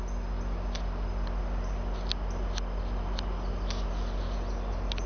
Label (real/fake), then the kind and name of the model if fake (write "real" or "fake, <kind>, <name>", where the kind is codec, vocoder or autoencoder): real